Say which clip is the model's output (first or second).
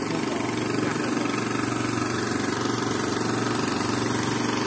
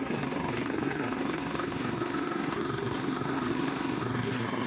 second